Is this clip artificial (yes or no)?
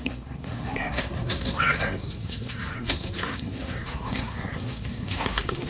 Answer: yes